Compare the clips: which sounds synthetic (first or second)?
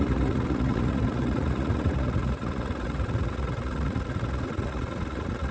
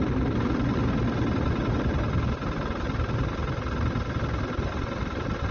first